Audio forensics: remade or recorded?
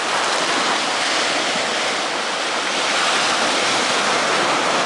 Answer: recorded